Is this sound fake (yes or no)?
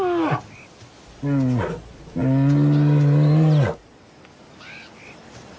no